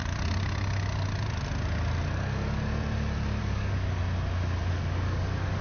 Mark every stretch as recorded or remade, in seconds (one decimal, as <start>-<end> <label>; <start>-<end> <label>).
0.0-3.4 recorded; 3.4-4.0 remade; 4.0-4.7 recorded; 4.7-5.6 remade